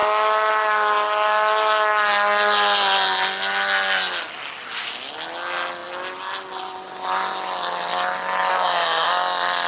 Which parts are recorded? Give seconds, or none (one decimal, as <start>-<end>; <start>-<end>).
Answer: 0.0-8.5; 9.1-9.7